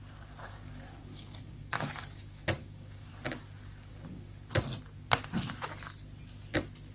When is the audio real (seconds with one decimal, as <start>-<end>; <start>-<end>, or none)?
0.0-0.4; 3.1-3.9; 4.5-6.9